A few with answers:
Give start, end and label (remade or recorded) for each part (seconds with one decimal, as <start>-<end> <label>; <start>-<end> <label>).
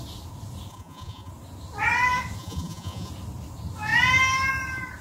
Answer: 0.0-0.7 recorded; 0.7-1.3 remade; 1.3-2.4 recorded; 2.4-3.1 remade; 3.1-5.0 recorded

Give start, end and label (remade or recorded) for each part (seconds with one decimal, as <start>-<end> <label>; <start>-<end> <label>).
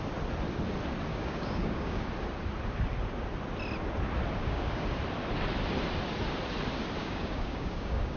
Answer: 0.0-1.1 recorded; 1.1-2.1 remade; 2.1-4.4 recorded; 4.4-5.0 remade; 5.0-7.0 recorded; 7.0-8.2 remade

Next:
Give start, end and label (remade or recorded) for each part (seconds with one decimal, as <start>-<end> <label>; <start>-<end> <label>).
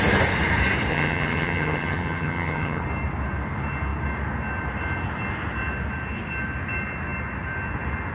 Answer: 0.0-0.9 recorded; 0.9-2.8 remade; 2.8-8.1 recorded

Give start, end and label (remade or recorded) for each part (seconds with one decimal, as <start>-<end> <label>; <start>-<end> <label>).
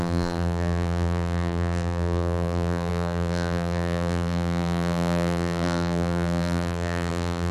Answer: 0.0-7.5 remade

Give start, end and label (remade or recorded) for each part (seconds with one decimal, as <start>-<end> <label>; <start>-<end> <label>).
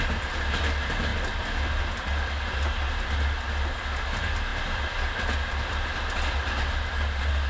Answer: 0.0-7.5 recorded